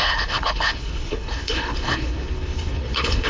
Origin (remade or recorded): remade